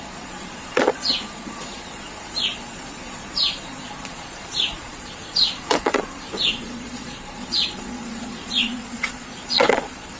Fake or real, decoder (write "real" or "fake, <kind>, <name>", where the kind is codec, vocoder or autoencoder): fake, vocoder, Vocos